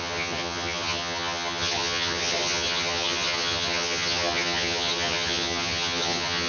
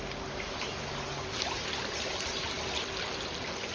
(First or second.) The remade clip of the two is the first